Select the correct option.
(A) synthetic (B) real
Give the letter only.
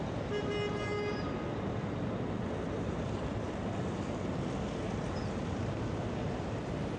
B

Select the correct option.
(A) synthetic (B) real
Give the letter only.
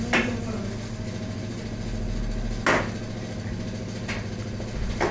B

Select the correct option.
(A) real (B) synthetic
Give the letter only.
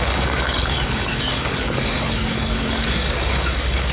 B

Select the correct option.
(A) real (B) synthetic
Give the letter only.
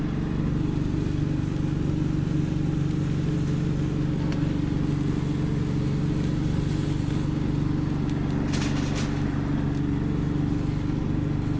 A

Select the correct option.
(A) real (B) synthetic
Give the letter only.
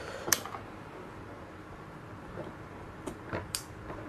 A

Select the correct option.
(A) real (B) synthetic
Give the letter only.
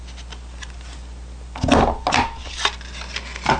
A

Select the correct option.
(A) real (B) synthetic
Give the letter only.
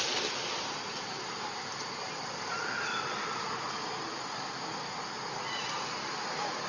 A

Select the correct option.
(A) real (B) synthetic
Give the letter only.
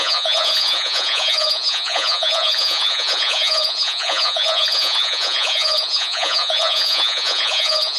B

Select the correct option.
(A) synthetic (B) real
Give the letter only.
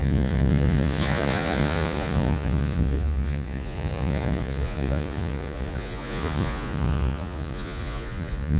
A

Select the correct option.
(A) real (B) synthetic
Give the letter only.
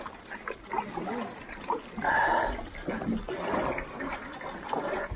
A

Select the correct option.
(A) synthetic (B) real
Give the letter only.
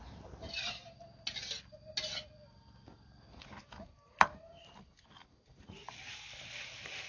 B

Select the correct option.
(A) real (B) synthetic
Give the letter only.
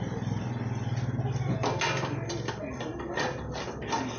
A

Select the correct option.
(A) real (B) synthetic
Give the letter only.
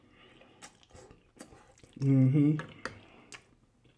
A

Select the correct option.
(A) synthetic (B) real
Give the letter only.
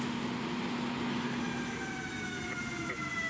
B